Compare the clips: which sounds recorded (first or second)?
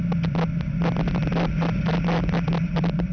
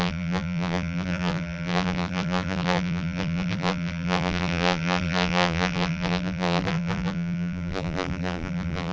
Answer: first